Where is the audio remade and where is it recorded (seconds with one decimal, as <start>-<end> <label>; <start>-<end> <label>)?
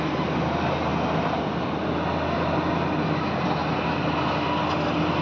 0.0-5.2 recorded